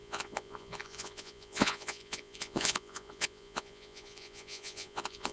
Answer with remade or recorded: remade